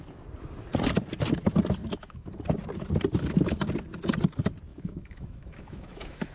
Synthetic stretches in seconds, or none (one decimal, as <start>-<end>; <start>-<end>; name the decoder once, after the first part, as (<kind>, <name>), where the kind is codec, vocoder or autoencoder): 1.8-2.3 (autoencoder, DAC-VAE); 4.7-6.3